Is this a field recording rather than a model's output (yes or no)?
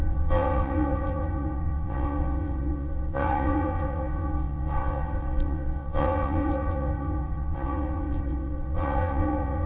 no